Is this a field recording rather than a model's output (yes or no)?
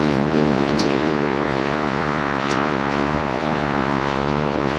no